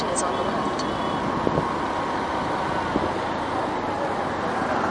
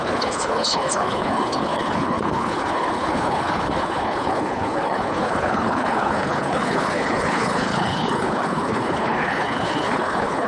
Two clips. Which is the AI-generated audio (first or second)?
second